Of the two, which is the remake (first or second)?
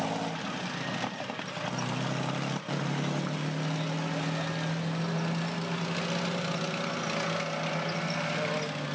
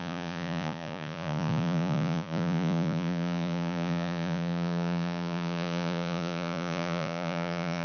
second